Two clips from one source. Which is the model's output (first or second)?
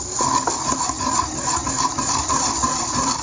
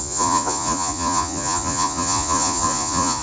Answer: second